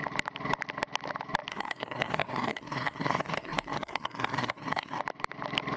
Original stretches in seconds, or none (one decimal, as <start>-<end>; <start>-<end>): 0.0-1.5; 5.0-5.8